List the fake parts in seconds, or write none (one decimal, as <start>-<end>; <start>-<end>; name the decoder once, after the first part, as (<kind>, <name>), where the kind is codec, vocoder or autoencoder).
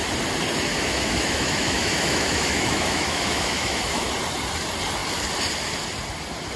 0.7-4.1 (autoencoder, DAC-VAE)